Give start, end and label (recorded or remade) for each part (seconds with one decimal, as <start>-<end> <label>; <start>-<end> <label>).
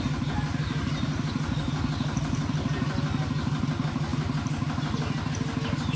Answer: 0.0-6.0 recorded